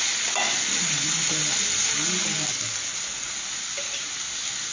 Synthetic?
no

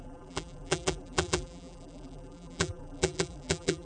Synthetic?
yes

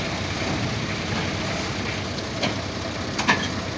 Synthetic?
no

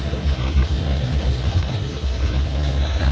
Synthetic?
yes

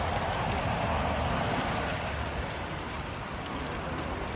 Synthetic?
no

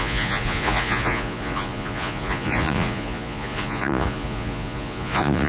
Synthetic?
yes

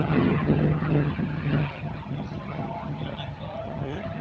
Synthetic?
yes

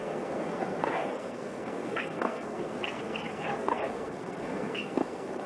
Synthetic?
yes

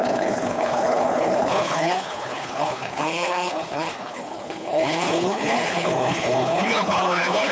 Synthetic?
yes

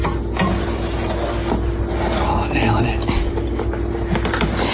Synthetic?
no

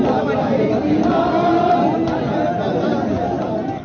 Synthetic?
no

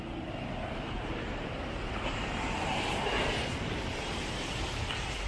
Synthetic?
yes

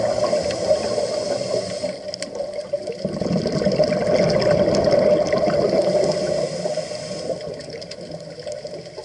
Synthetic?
no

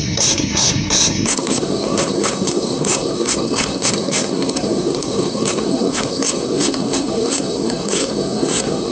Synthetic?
yes